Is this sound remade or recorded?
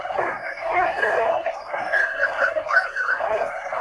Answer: remade